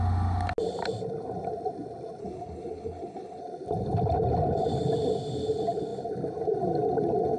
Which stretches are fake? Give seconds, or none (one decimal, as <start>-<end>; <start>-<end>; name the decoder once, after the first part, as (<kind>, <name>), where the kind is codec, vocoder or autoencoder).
2.2-3.4 (codec, HILCodec)